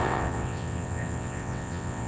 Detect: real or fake fake